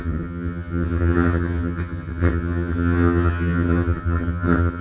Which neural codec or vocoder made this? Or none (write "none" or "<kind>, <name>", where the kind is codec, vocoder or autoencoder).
vocoder, HiFi-GAN